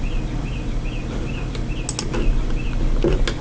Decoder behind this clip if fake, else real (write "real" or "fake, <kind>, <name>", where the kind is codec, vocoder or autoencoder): real